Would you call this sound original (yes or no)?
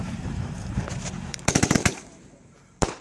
no